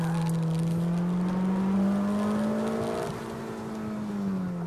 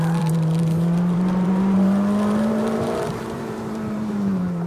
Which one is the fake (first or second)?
second